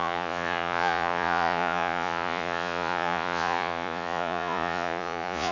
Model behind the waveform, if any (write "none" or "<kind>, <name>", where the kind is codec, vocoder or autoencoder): vocoder, Vocos